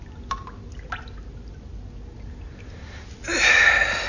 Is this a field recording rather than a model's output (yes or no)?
yes